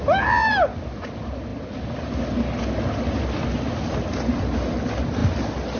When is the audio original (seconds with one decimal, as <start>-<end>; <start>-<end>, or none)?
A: 0.0-5.8